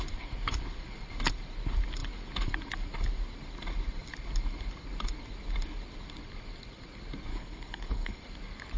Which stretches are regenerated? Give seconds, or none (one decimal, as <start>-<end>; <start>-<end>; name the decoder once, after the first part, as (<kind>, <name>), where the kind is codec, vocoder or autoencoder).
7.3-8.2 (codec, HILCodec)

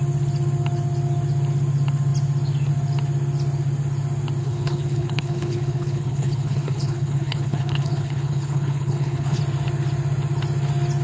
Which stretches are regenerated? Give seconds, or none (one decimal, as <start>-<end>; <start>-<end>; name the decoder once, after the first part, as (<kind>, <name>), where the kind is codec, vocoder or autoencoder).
4.4-9.4 (codec, HILCodec)

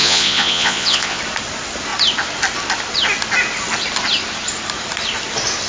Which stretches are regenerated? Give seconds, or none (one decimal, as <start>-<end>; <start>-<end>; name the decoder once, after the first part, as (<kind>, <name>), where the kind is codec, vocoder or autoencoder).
0.0-1.2 (vocoder, Vocos)

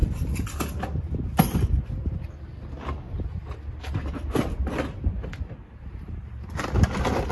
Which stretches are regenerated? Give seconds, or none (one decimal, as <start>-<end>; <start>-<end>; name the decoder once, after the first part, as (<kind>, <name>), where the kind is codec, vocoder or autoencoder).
0.0-7.3 (vocoder, BigVGAN v2)

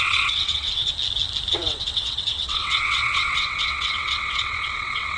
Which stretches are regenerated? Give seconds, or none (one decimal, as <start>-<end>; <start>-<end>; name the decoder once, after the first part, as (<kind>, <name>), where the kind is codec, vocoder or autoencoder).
0.0-0.9 (vocoder, WaveNeXt); 1.5-5.2